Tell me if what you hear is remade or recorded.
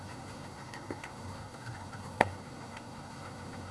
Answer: remade